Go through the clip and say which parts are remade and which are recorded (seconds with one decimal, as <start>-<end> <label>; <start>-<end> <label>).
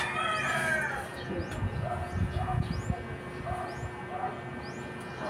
0.0-5.3 recorded